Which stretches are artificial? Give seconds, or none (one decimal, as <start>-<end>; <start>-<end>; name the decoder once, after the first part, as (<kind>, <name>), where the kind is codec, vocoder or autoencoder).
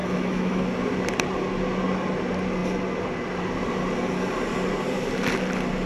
0.0-0.6 (autoencoder, DAC-VAE)